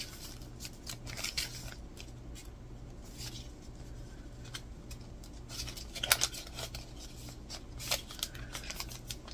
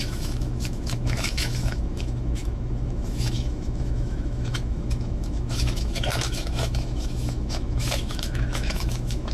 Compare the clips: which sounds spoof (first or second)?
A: second